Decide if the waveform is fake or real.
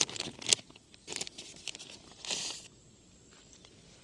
real